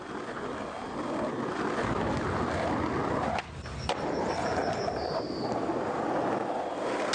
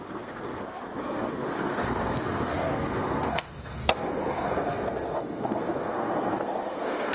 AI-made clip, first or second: second